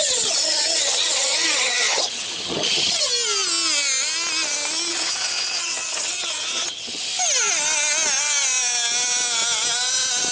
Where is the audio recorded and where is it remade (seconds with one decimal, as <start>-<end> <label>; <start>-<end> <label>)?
0.0-3.1 remade; 3.1-4.9 recorded; 4.9-7.1 remade; 7.1-10.3 recorded

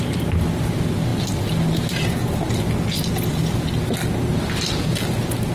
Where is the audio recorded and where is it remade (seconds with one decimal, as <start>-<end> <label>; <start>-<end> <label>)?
0.0-5.5 recorded